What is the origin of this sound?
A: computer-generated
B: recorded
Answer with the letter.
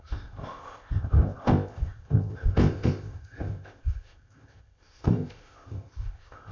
A